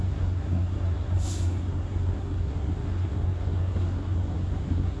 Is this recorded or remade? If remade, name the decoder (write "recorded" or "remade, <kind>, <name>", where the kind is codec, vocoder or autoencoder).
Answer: remade, codec, SNAC